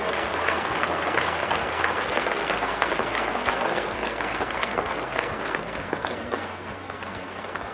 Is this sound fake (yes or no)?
yes